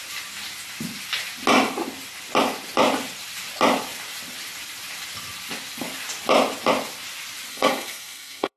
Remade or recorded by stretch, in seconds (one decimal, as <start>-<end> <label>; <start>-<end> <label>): 0.0-7.5 recorded; 7.5-8.6 remade